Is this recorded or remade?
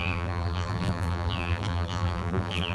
remade